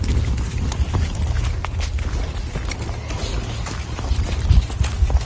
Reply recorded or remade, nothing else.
recorded